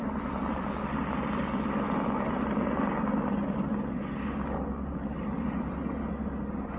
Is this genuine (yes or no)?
yes